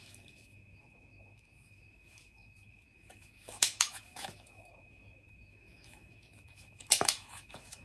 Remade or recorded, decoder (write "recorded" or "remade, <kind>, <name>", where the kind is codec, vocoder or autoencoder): remade, autoencoder, DAC-VAE